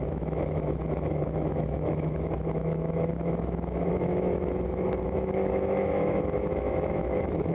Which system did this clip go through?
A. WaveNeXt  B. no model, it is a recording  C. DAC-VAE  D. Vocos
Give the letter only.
C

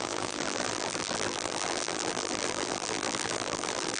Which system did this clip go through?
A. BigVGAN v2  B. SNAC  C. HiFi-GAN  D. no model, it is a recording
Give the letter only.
A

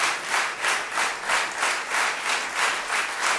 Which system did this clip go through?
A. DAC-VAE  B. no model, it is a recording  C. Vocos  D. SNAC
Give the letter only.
B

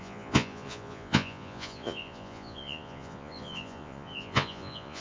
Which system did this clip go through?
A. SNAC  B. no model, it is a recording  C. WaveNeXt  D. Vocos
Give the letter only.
D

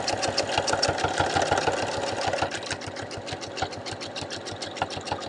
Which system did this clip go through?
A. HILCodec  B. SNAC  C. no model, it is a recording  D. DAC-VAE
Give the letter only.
C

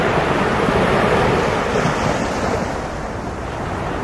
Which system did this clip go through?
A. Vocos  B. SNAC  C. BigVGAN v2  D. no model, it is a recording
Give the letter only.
C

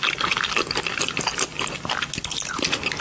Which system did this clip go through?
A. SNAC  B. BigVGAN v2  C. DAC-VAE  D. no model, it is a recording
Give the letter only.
D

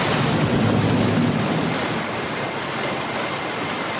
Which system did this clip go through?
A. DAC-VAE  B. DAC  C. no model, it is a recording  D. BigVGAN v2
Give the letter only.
C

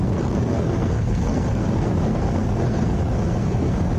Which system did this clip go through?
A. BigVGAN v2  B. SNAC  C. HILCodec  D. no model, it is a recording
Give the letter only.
B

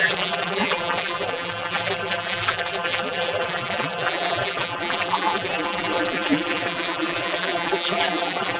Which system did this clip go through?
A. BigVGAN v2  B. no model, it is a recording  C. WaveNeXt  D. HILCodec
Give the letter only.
A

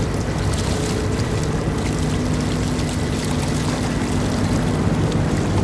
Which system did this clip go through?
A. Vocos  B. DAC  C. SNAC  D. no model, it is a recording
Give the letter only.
D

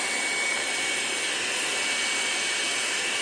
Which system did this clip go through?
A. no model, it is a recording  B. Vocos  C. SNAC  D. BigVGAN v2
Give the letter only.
A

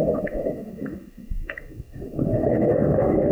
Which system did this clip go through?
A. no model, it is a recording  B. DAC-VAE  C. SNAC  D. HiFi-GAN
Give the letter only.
B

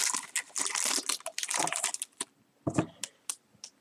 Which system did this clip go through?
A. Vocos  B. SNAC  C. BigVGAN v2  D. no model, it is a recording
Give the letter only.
D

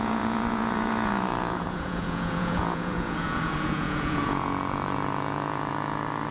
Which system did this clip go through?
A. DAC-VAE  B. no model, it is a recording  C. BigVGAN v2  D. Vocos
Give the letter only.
D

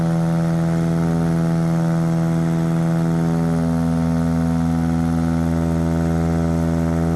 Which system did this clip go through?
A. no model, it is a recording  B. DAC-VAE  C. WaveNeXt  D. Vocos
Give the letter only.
A